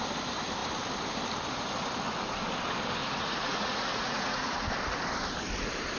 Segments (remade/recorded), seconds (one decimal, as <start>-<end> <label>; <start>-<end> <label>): 0.0-3.0 recorded; 3.0-4.7 remade; 4.7-6.0 recorded